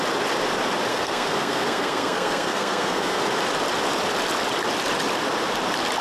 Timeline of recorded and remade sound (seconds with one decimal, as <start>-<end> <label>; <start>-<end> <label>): 0.0-0.9 recorded; 0.9-3.2 remade; 3.2-6.0 recorded